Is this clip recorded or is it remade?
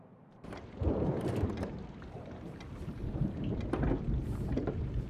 remade